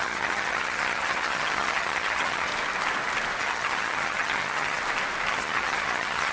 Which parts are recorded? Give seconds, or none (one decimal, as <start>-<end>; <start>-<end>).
2.5-3.4; 4.8-5.3

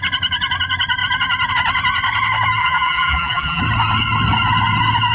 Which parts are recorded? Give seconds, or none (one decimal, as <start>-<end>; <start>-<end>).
0.0-2.6; 3.6-5.1